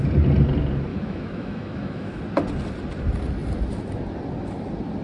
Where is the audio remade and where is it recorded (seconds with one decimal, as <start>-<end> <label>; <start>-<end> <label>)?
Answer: 0.0-0.9 recorded; 0.9-2.2 remade; 2.2-5.0 recorded